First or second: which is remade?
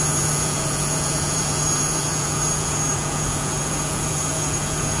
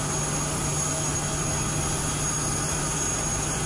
first